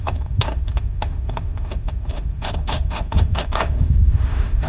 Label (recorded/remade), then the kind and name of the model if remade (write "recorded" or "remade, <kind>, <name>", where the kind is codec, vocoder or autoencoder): remade, autoencoder, DAC-VAE